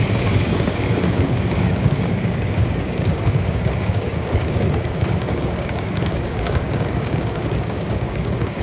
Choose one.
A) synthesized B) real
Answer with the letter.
A